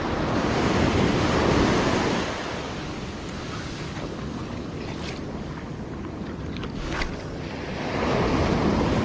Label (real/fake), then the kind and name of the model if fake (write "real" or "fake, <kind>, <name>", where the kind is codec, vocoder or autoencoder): real